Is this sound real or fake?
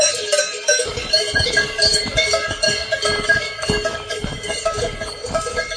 fake